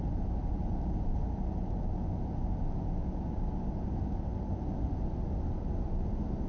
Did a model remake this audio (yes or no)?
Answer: no